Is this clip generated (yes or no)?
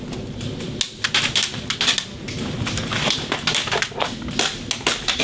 no